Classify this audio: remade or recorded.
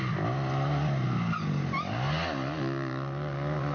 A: recorded